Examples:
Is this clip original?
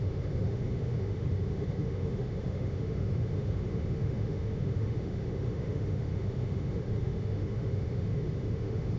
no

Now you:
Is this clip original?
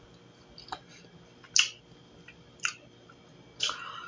yes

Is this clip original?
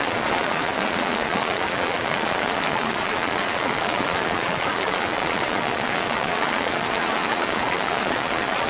no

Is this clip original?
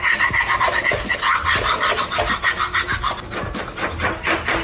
yes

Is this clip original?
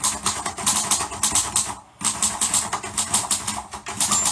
yes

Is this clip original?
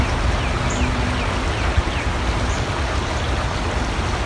yes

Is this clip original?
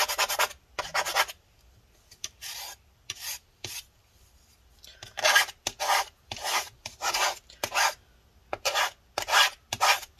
yes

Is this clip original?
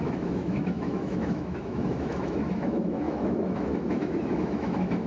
no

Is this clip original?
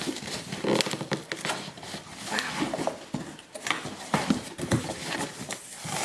yes